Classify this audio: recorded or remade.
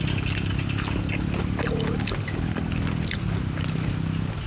recorded